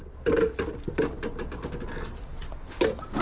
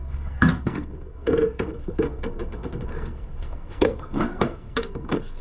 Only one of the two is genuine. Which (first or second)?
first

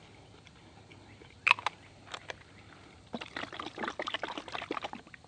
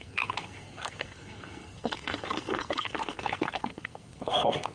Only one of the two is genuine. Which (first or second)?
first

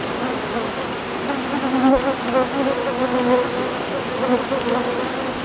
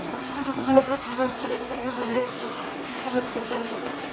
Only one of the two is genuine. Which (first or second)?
first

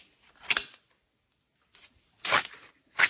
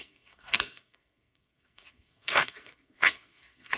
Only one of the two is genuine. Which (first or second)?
first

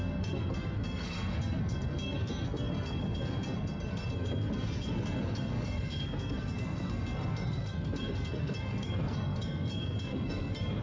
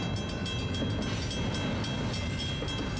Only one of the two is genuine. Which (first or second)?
second